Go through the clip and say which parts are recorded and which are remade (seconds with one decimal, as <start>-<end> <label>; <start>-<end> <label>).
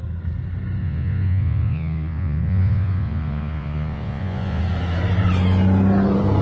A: 0.0-0.8 recorded; 0.8-4.6 remade; 4.6-6.4 recorded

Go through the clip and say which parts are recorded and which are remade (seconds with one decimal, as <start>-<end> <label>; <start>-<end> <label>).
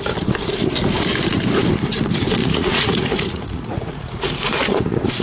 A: 0.0-2.4 recorded; 2.4-5.2 remade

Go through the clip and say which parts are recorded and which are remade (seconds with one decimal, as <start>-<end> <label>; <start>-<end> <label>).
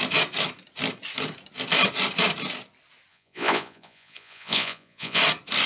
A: 0.0-3.1 recorded; 3.1-5.2 remade; 5.2-5.7 recorded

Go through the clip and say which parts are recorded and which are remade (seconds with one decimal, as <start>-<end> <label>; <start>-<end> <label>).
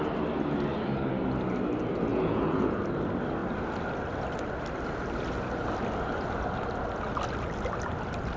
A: 0.0-2.1 recorded; 2.1-2.8 remade; 2.8-8.4 recorded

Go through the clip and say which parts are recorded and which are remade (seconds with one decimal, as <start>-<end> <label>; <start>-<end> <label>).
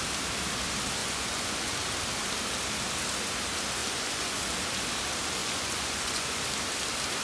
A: 0.0-1.0 recorded; 1.0-1.7 remade; 1.7-3.8 recorded; 3.8-4.4 remade; 4.4-5.4 recorded; 5.4-6.4 remade; 6.4-7.2 recorded